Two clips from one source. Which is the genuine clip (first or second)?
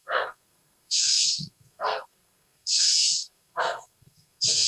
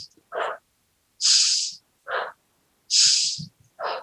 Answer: second